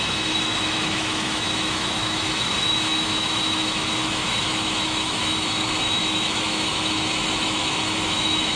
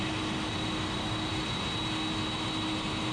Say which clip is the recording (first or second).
second